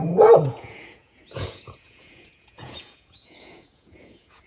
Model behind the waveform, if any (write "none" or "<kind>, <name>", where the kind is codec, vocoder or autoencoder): vocoder, Vocos